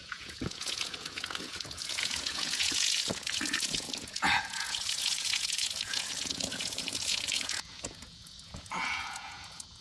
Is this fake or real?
fake